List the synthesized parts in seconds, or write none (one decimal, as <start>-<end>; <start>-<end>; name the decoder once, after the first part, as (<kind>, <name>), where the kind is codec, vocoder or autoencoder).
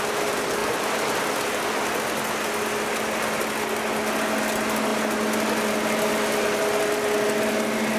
none